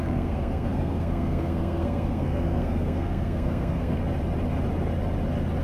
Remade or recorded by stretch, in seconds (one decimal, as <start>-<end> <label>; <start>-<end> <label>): 0.0-4.0 remade; 4.0-5.6 recorded